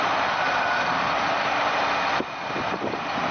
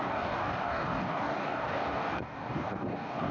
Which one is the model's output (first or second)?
second